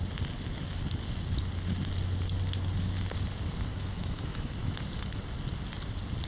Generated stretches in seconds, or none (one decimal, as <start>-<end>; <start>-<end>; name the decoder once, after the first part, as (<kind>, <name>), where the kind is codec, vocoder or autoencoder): 3.7-4.5 (autoencoder, DAC-VAE)